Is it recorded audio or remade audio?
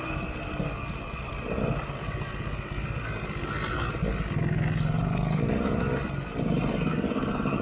recorded